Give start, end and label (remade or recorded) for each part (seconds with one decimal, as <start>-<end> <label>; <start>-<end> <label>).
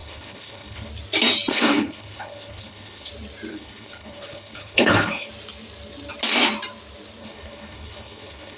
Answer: 0.0-0.9 remade; 0.9-1.5 recorded; 1.5-3.1 remade; 3.1-3.5 recorded; 3.5-5.3 remade; 5.3-7.2 recorded; 7.2-8.6 remade